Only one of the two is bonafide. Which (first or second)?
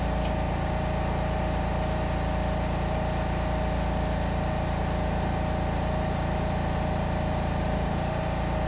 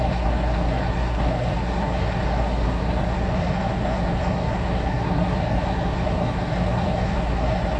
first